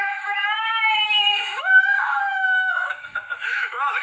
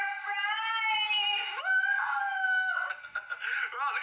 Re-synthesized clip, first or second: first